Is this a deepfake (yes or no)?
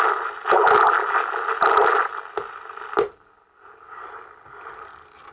no